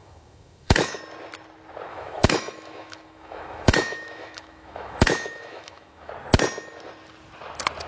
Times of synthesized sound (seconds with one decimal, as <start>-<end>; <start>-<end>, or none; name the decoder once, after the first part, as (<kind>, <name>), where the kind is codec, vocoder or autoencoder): 0.0-1.0 (autoencoder, DAC-VAE); 1.9-6.1